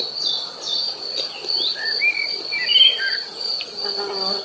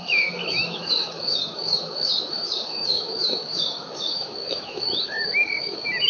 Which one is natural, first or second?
first